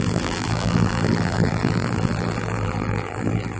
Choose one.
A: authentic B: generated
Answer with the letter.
B